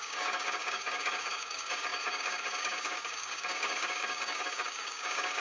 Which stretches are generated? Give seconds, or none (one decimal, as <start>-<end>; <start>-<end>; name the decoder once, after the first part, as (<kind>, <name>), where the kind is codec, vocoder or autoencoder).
0.0-5.4 (codec, DAC)